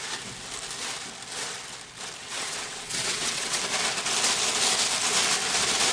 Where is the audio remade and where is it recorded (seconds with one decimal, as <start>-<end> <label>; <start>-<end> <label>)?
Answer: 0.0-2.2 recorded; 2.2-3.6 remade; 3.6-5.9 recorded